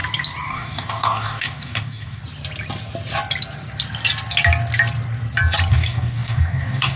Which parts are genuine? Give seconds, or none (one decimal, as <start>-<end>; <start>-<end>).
0.0-0.5; 2.2-5.7